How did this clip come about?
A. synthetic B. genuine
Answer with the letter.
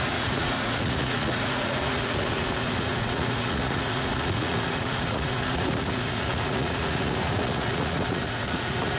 A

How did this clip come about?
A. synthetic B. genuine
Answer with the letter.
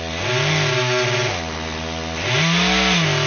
B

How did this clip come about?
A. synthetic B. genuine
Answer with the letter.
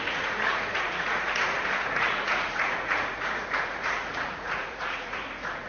A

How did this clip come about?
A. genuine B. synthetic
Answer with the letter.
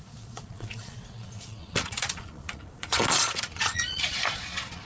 B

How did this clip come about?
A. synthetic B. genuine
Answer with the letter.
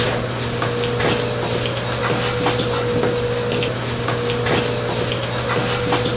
B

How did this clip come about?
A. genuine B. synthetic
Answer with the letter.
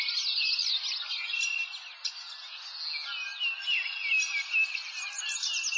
A